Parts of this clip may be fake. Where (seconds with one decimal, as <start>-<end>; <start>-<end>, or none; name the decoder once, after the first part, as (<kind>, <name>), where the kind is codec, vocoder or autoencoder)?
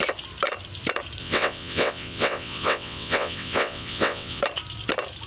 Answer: 1.2-4.4 (vocoder, WaveNeXt)